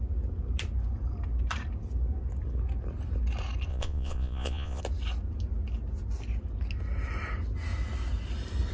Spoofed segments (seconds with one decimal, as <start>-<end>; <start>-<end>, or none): 3.7-4.8